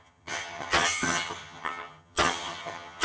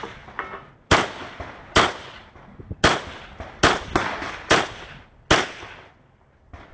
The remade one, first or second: first